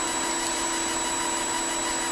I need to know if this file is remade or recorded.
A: recorded